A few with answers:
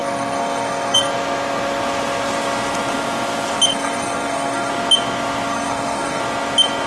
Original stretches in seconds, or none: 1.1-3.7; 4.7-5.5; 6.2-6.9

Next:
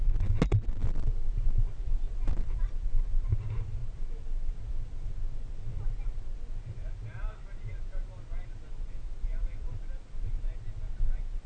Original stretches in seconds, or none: 0.0-11.5

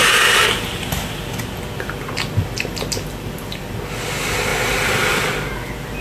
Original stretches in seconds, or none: 0.0-6.0

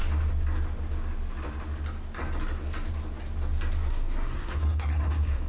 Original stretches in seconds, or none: 0.0-3.9

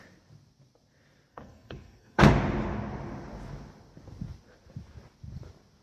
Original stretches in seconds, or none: 0.0-1.3; 2.3-5.8

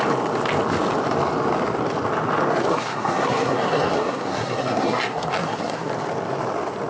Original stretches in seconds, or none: 0.0-2.7; 5.9-6.9

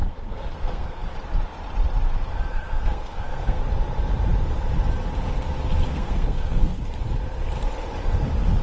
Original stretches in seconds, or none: 1.1-2.5; 3.6-5.9; 6.8-8.6

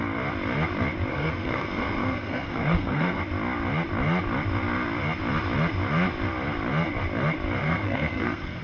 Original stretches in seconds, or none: 0.0-1.1; 3.2-7.6